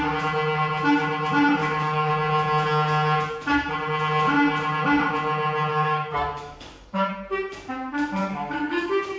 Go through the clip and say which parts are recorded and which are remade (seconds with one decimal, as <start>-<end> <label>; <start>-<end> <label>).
0.0-1.6 recorded; 1.6-2.1 remade; 2.1-5.7 recorded; 5.7-7.1 remade; 7.1-8.2 recorded; 8.2-9.2 remade